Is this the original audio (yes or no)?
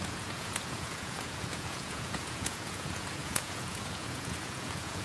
no